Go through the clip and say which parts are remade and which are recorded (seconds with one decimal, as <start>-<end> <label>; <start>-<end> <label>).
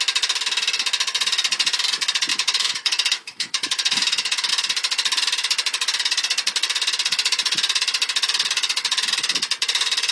0.0-2.3 recorded; 2.3-4.5 remade; 4.5-10.1 recorded